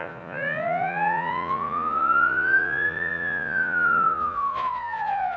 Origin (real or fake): fake